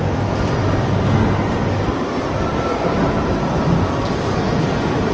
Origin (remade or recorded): recorded